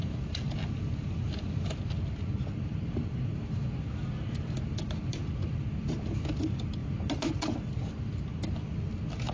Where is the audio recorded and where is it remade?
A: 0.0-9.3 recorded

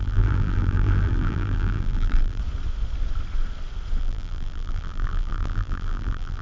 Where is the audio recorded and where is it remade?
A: 0.0-2.4 remade; 2.4-4.0 recorded; 4.0-6.4 remade

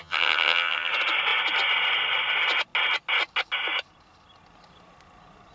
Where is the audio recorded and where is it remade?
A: 0.0-0.9 remade; 0.9-5.5 recorded

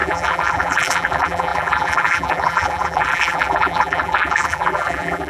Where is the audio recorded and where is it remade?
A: 0.0-5.3 remade

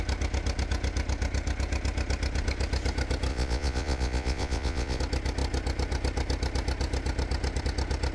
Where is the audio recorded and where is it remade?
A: 0.0-3.3 recorded; 3.3-5.0 remade; 5.0-8.1 recorded

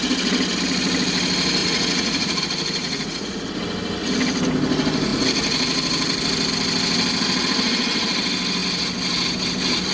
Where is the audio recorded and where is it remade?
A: 0.0-1.6 recorded; 1.6-2.4 remade; 2.4-2.8 recorded; 2.8-3.5 remade; 3.5-9.9 recorded

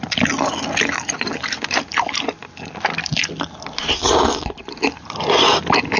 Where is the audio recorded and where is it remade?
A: 0.0-6.0 recorded

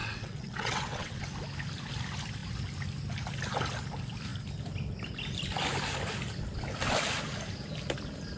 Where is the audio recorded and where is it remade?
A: 0.0-1.2 remade; 1.2-8.4 recorded